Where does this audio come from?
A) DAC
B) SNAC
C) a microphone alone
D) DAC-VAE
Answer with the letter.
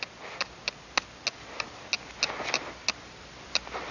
C